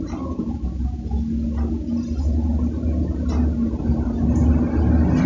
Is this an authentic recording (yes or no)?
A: yes